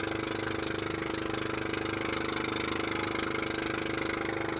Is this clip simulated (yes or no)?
no